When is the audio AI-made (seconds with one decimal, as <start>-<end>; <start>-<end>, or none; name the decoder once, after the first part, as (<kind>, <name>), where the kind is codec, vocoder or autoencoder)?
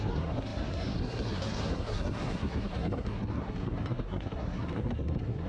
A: 0.0-5.5 (codec, SNAC)